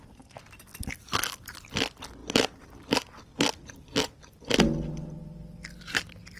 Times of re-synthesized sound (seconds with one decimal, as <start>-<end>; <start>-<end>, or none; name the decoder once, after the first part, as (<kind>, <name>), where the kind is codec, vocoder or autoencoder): none